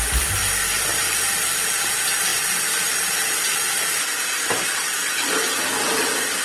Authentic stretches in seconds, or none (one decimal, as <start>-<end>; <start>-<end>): 0.0-6.4